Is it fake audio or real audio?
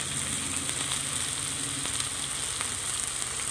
real